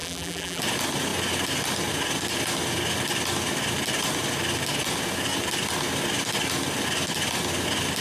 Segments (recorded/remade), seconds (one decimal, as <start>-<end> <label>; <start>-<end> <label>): 0.0-0.6 remade; 0.6-8.0 recorded